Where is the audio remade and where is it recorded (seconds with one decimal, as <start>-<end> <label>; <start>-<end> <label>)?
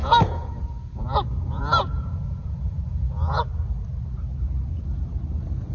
0.0-3.4 remade; 3.4-5.7 recorded